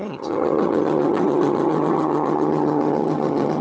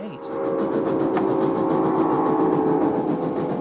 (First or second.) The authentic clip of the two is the second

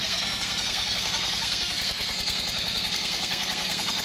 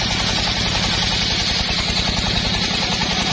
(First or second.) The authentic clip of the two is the second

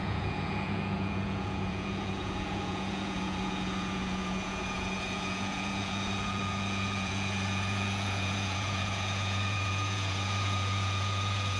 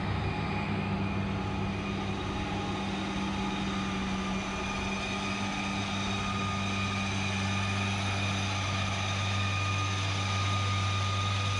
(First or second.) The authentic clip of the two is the second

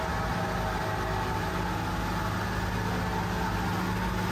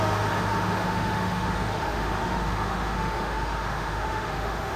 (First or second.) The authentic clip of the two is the first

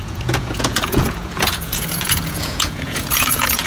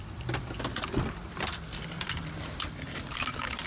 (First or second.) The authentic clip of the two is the second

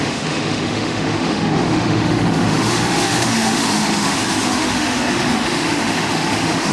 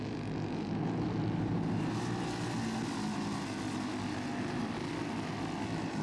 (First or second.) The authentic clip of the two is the second